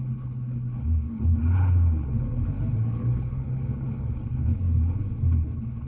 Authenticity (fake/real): fake